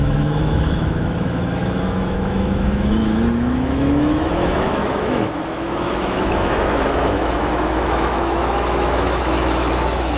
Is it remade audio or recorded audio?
remade